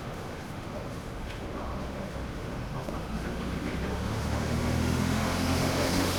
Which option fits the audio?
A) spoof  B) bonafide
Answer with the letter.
A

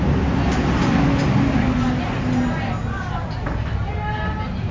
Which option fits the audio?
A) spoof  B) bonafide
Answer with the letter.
B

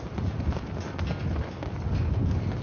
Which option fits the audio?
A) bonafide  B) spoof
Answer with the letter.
A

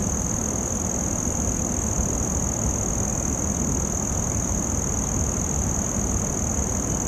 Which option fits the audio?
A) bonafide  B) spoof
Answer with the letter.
A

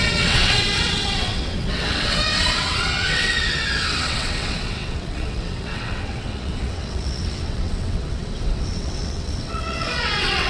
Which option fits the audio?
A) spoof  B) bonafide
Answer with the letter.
A